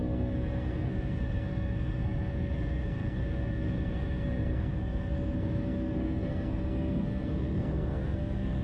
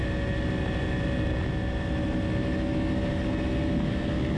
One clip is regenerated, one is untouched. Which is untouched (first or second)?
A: second